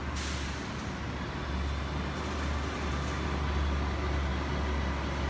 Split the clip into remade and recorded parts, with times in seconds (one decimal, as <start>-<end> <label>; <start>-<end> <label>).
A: 0.0-5.3 recorded